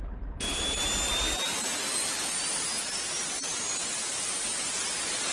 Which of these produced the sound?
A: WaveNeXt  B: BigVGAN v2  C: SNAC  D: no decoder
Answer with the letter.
D